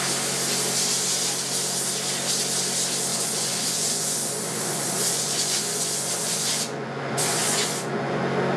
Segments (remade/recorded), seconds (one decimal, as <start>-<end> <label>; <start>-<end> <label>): 0.0-3.1 recorded; 3.1-8.2 remade; 8.2-8.6 recorded